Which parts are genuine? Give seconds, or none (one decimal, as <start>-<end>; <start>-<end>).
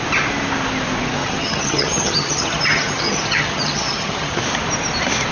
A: 0.0-1.2; 4.4-5.3